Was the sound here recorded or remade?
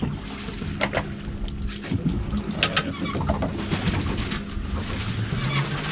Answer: recorded